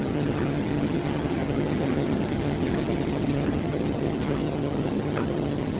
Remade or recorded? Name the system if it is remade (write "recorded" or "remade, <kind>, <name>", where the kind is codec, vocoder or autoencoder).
remade, vocoder, HiFi-GAN